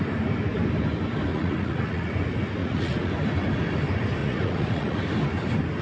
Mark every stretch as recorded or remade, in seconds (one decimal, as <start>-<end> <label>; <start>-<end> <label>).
0.0-1.3 recorded; 1.3-2.1 remade; 2.1-2.6 recorded; 2.6-3.1 remade; 3.1-4.2 recorded; 4.2-5.0 remade; 5.0-5.8 recorded